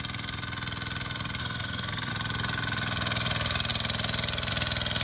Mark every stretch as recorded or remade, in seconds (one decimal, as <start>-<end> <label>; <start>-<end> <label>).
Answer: 0.0-1.4 recorded; 1.4-2.1 remade; 2.1-5.0 recorded